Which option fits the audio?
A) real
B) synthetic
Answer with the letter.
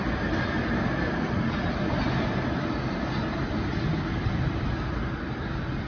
A